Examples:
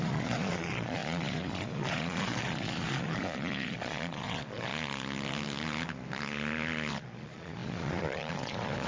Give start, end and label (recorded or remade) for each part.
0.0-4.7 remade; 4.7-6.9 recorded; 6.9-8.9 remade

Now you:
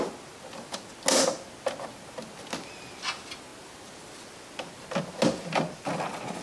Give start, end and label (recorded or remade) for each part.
0.0-6.4 recorded

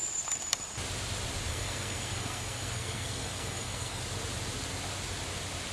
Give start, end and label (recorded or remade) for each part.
0.0-1.5 recorded; 1.5-4.0 remade; 4.0-5.7 recorded

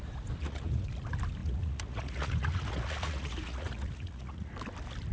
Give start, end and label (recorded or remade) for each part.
0.0-0.4 recorded; 0.4-0.9 remade; 0.9-1.4 recorded; 1.4-4.5 remade; 4.5-5.1 recorded

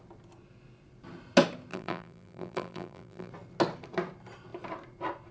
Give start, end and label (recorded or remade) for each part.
0.0-1.7 recorded; 1.7-3.3 remade; 3.3-5.3 recorded

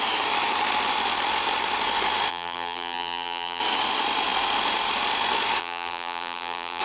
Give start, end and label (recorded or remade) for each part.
0.0-2.3 recorded; 2.3-3.6 remade; 3.6-5.6 recorded; 5.6-6.8 remade

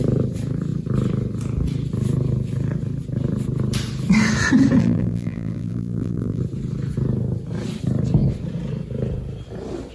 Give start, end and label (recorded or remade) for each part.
0.0-4.8 recorded; 4.8-6.4 remade; 6.4-9.9 recorded